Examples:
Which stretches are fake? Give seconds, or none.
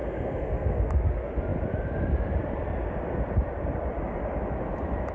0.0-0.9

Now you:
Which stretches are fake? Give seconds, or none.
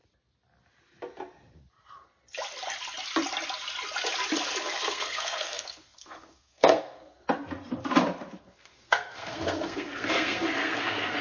4.6-7.2; 8.4-11.2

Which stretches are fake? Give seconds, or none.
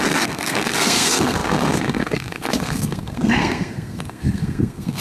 0.0-5.0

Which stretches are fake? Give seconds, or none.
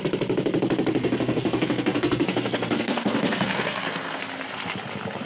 1.0-4.2